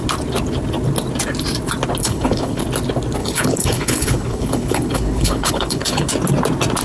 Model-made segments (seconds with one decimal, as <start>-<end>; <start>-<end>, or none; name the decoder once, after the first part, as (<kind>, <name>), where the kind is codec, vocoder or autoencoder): 2.0-2.6 (codec, HILCodec); 3.2-6.1